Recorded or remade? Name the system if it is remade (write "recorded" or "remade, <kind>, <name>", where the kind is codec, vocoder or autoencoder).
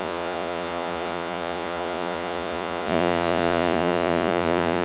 remade, vocoder, Vocos